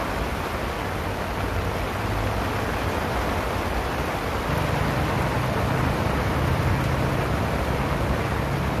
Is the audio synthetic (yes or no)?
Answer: no